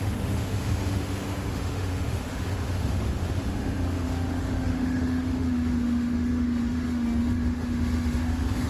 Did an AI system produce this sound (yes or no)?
yes